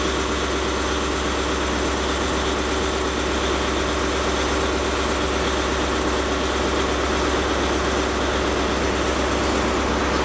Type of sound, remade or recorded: recorded